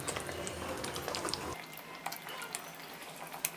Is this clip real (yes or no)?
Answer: yes